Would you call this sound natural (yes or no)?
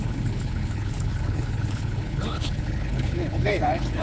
no